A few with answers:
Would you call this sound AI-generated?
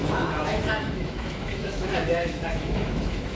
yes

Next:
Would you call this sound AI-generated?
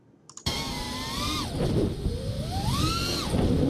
no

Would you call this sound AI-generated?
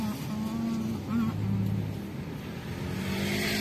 no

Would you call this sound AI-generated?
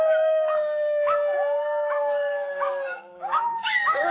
yes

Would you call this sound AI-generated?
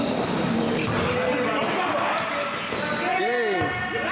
no